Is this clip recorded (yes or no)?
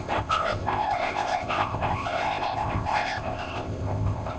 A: no